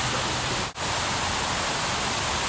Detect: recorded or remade recorded